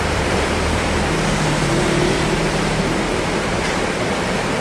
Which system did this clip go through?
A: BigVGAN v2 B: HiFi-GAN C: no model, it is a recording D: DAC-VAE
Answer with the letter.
A